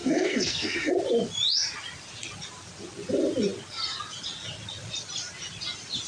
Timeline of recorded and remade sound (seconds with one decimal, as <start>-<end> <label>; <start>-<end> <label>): 0.0-0.9 remade; 0.9-6.1 recorded